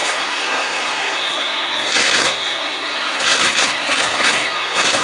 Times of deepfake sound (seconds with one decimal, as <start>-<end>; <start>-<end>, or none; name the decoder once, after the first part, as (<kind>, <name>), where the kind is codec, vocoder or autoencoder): 0.0-5.0 (codec, SNAC)